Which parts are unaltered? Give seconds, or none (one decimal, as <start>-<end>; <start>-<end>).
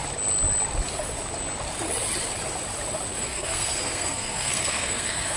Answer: 0.0-3.2